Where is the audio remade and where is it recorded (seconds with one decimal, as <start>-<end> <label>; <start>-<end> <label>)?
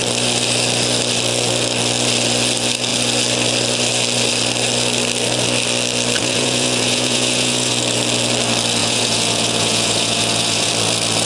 0.0-6.2 recorded; 6.2-7.7 remade; 7.7-8.8 recorded; 8.8-10.7 remade; 10.7-11.2 recorded